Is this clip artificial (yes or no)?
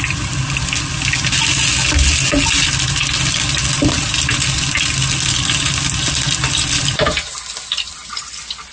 no